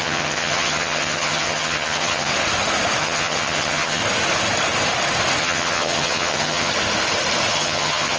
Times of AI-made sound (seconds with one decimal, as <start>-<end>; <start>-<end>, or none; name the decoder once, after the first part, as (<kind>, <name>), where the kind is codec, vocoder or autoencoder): 0.0-2.3 (vocoder, HiFi-GAN); 3.0-4.0; 5.4-6.7; 7.5-8.2